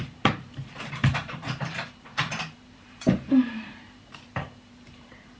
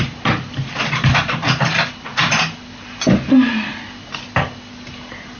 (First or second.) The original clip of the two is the second